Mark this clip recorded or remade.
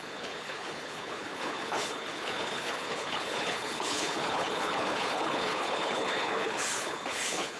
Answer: remade